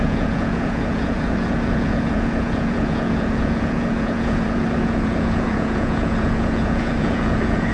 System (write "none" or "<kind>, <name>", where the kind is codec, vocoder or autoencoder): vocoder, Vocos